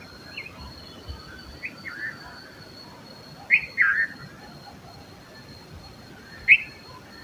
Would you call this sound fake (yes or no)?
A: no